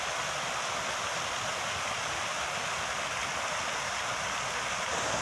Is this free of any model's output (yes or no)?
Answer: yes